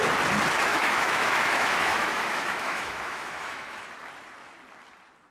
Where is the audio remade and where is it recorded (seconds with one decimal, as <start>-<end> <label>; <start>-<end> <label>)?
0.0-0.7 recorded; 0.7-3.9 remade; 3.9-5.3 recorded